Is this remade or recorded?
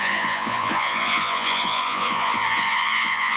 remade